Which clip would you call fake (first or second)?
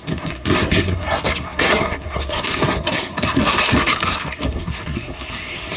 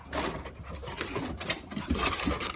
first